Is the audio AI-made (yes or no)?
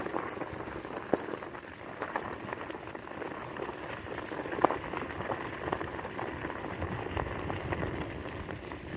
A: no